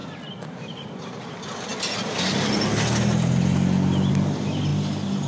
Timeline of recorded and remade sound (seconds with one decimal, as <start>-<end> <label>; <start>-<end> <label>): 0.0-5.3 recorded